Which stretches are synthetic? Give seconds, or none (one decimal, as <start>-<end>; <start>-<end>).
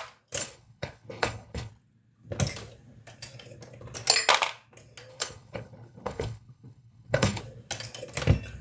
0.4-1.7; 5.1-7.4